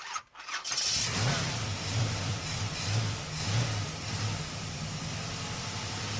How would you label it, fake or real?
fake